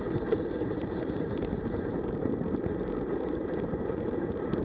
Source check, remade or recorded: remade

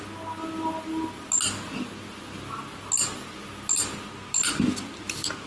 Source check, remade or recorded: recorded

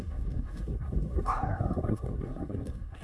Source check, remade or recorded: remade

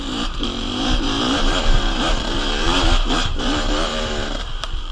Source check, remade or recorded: remade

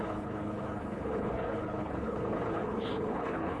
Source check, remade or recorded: remade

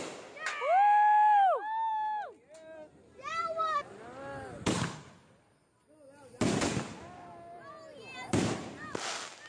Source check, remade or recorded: recorded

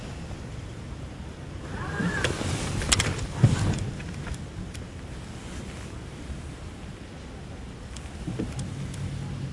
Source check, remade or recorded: recorded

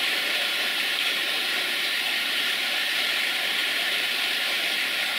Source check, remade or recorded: remade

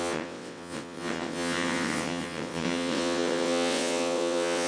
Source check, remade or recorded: remade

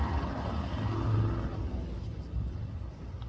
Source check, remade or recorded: recorded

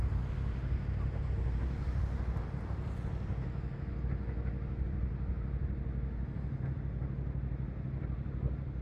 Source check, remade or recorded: recorded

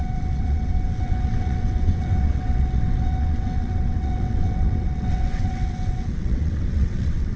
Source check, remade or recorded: remade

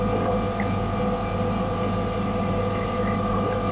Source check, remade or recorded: recorded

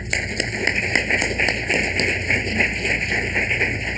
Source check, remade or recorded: recorded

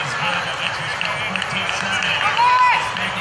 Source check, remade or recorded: recorded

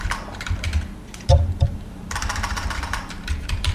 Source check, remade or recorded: remade